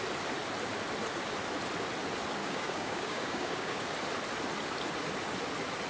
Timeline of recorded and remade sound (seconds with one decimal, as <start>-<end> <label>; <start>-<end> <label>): 0.0-2.4 recorded; 2.4-3.8 remade; 3.8-5.9 recorded